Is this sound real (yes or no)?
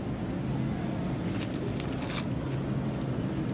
yes